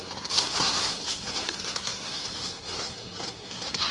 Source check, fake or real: fake